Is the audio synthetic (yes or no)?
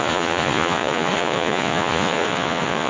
yes